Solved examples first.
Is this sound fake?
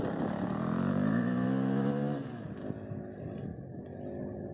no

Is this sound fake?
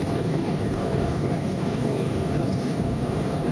yes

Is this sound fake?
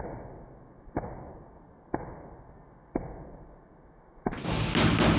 no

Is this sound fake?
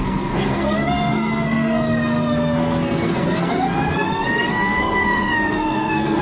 yes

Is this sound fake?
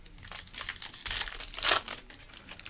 no